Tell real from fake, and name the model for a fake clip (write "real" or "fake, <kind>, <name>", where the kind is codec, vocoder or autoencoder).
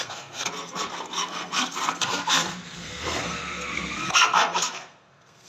fake, codec, SNAC